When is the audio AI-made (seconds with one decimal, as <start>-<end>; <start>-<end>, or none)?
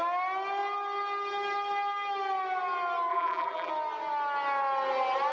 3.1-3.7